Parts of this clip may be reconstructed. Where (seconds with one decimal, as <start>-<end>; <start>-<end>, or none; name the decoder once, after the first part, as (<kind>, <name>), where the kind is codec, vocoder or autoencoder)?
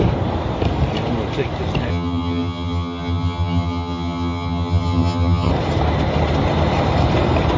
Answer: 1.9-5.5 (vocoder, HiFi-GAN)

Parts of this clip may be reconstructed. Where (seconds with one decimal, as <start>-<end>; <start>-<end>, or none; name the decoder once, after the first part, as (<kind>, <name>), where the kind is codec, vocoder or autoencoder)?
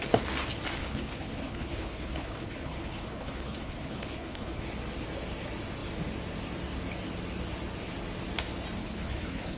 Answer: 0.8-4.6 (codec, HILCodec); 8.8-9.6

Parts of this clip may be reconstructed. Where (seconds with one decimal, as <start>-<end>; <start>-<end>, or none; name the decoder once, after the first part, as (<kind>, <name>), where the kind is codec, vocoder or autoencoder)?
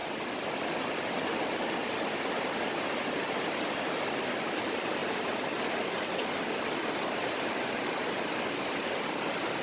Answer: 0.0-1.0 (vocoder, BigVGAN v2)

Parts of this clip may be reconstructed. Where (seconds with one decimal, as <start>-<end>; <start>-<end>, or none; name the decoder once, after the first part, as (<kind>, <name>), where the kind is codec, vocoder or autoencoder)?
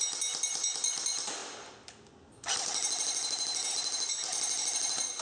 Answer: none